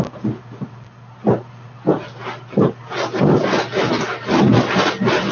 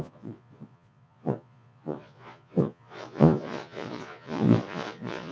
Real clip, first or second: first